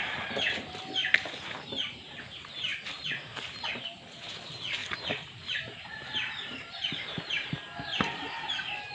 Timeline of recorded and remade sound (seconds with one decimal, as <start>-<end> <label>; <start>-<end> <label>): 0.0-4.8 recorded; 4.8-6.1 remade; 6.1-8.9 recorded